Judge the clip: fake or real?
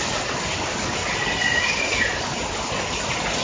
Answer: real